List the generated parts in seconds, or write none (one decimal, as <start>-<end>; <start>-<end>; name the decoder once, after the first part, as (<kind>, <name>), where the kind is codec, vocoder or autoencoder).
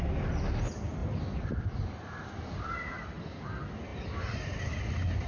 1.0-1.5 (vocoder, BigVGAN v2); 3.9-5.3